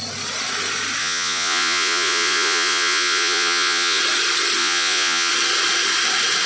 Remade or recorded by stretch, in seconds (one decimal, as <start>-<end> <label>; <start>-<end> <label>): 0.0-1.0 recorded; 1.0-4.0 remade; 4.0-4.6 recorded; 4.6-5.3 remade; 5.3-6.5 recorded